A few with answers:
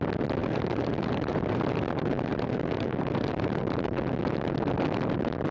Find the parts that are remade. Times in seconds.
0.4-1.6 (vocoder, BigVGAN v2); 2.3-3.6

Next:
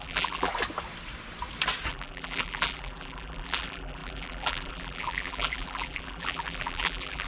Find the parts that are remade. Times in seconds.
0.0-0.5 (vocoder, BigVGAN v2); 1.9-7.3

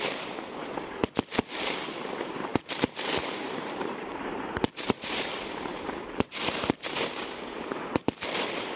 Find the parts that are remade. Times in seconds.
0.0-1.0 (vocoder, BigVGAN v2); 1.9-8.8

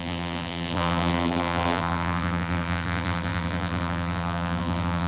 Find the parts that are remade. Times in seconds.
0.0-5.1 (vocoder, BigVGAN v2)